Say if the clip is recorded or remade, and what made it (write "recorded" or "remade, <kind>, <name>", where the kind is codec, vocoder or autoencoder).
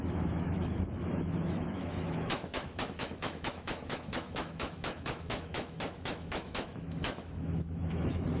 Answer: remade, autoencoder, DAC-VAE